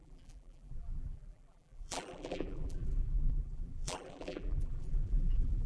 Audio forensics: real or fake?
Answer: fake